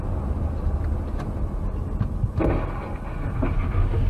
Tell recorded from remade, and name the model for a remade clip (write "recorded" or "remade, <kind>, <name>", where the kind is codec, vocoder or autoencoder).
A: recorded